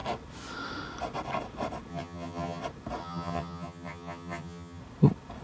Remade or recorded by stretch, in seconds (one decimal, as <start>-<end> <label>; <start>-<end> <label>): 0.0-1.9 recorded; 1.9-2.6 remade; 2.6-3.0 recorded; 3.0-4.8 remade; 4.8-5.4 recorded

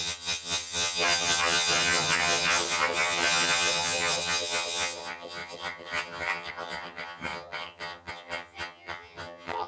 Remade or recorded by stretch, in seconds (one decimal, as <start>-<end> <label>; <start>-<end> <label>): 0.0-9.7 remade

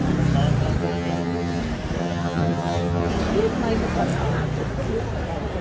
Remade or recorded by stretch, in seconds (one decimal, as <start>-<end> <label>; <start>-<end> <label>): 0.0-0.8 recorded; 0.8-1.6 remade; 1.6-2.0 recorded; 2.0-3.1 remade; 3.1-5.6 recorded

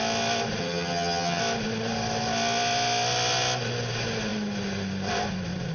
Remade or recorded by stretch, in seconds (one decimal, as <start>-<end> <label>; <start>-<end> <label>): 0.0-0.6 recorded; 0.6-1.4 remade; 1.4-5.7 recorded

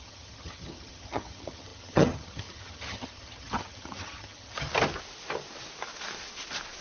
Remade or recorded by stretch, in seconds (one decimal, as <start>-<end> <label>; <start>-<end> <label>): 0.0-4.7 remade; 4.7-6.8 recorded

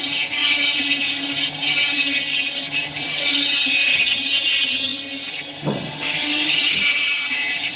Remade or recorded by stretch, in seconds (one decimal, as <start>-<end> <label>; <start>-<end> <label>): 0.0-7.8 remade